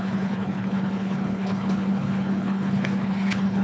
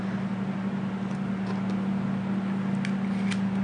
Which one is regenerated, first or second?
first